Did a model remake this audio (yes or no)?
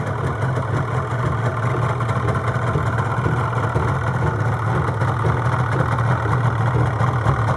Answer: no